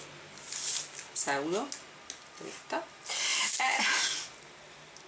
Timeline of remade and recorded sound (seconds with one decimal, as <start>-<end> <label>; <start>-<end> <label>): 0.0-3.3 recorded; 3.3-3.8 remade; 3.8-5.1 recorded